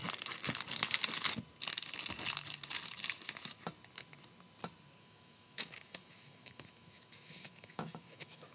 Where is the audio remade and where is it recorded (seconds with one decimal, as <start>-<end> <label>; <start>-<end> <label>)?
0.0-5.0 recorded; 5.0-8.5 remade